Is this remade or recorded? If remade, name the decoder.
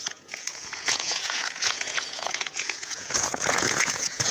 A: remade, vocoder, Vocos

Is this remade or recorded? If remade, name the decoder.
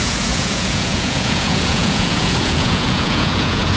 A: remade, vocoder, Vocos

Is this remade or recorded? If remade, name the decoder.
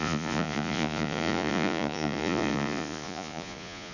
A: remade, vocoder, Vocos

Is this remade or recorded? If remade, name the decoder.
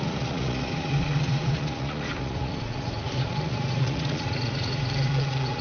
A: remade, vocoder, Vocos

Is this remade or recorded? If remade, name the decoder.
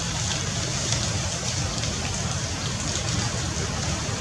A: recorded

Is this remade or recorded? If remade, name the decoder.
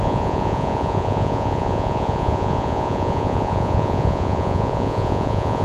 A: remade, vocoder, Vocos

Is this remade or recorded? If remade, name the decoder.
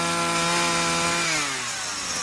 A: recorded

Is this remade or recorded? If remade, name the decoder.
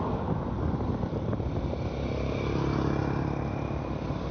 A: recorded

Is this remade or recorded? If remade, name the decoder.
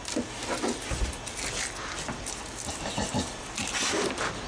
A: recorded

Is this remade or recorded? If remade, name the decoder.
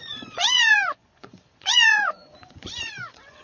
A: remade, vocoder, Vocos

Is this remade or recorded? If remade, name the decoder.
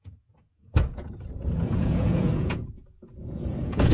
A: remade, vocoder, Vocos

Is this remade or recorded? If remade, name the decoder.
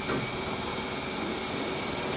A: recorded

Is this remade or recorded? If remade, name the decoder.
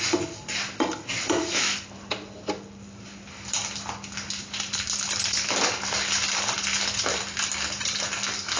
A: recorded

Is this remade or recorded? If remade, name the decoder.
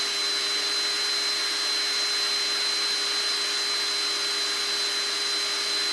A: recorded